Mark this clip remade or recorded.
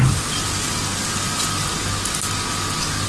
recorded